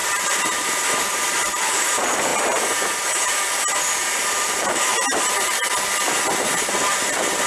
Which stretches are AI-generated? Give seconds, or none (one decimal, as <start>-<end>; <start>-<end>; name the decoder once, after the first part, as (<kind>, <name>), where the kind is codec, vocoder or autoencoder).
0.0-5.6 (vocoder, BigVGAN v2); 6.3-7.5